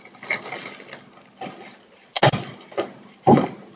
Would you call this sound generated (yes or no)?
no